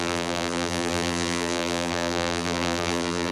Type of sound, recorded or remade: remade